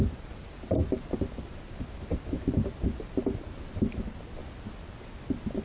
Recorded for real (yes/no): yes